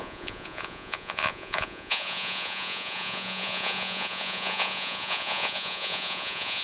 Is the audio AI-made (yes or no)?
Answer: yes